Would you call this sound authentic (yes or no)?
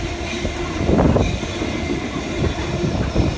yes